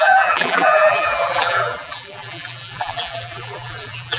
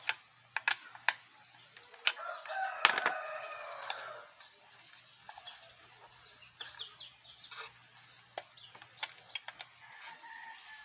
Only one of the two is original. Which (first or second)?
second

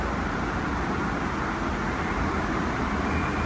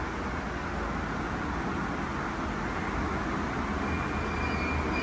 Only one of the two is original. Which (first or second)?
second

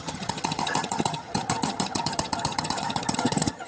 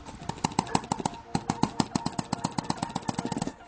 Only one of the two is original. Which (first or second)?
second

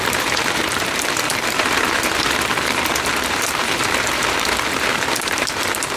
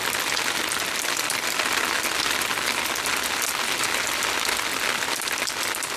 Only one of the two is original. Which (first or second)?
second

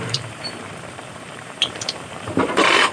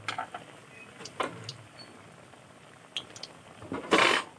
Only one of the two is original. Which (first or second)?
second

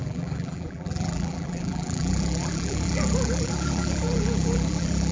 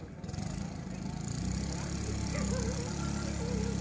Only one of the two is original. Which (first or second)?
second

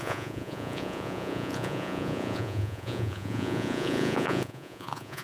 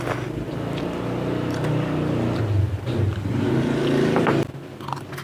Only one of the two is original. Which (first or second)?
second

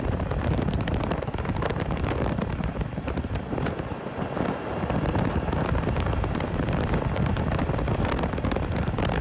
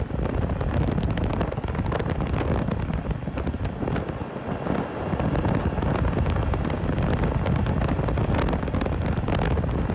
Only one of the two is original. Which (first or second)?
second